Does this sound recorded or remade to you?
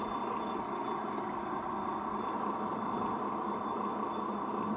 recorded